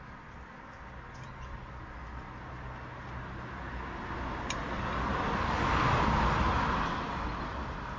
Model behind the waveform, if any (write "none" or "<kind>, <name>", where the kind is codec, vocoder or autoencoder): none